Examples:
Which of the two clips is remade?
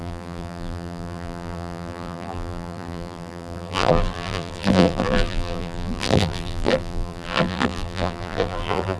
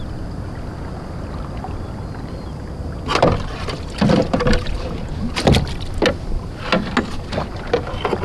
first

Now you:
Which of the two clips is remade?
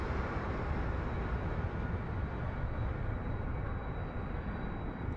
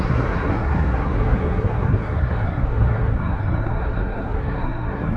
second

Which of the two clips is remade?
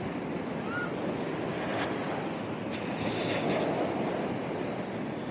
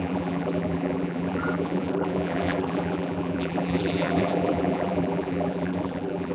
second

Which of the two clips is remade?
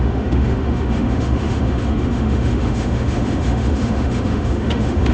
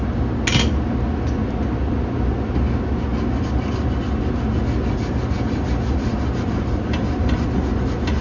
first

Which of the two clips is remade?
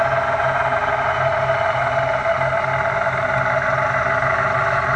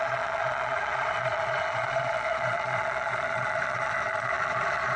second